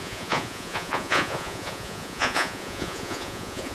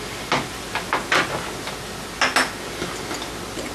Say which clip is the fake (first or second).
first